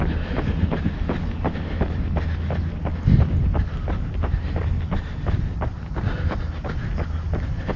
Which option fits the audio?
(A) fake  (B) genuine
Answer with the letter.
B